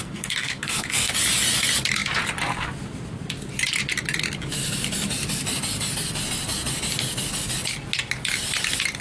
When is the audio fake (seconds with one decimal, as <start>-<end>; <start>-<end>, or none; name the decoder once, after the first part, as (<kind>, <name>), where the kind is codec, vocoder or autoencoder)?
0.0-1.1 (codec, SNAC)